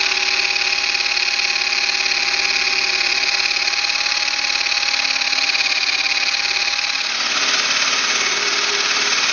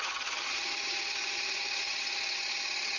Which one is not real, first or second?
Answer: second